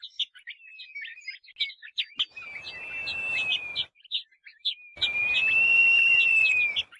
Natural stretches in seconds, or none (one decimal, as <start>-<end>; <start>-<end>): 0.0-3.5; 4.1-4.5; 5.8-7.0